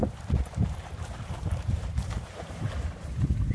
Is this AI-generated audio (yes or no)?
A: yes